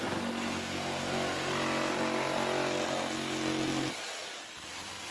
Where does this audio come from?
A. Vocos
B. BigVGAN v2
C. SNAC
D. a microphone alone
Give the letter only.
D